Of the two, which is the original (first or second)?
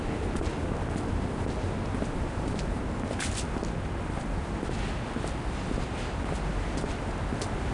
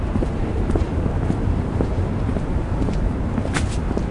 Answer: first